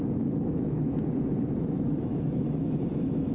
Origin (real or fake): fake